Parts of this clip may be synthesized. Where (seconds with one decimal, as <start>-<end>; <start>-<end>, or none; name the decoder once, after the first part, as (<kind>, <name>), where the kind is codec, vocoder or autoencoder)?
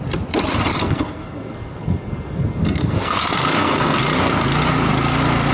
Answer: 0.7-4.0 (codec, SNAC)